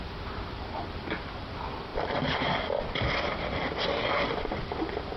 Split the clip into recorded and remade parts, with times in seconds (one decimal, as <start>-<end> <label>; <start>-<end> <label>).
0.0-5.2 remade